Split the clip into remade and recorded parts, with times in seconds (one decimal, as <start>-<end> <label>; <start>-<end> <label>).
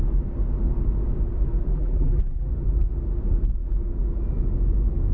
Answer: 0.0-1.7 recorded; 1.7-2.5 remade; 2.5-5.1 recorded